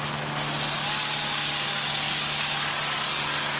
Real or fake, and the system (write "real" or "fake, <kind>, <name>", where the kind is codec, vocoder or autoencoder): real